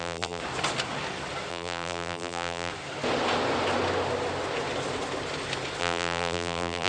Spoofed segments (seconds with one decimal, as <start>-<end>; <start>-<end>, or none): 0.0-0.4; 1.5-2.7; 5.8-6.9